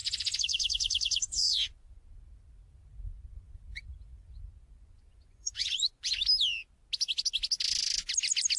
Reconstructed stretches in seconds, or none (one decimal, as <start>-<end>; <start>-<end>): 0.0-2.0; 3.7-6.2